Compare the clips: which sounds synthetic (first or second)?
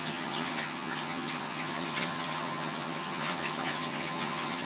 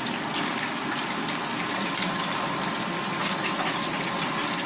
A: first